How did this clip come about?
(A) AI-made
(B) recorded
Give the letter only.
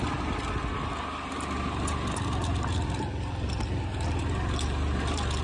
B